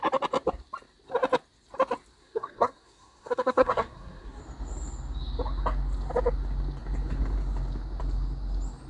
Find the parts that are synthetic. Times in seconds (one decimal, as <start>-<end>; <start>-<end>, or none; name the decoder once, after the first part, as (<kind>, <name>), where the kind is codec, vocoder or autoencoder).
2.2-4.4 (codec, SNAC)